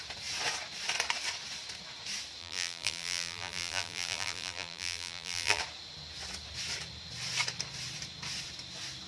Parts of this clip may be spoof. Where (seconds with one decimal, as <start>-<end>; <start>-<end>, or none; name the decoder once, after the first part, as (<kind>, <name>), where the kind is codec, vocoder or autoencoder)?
2.4-5.6 (vocoder, BigVGAN v2)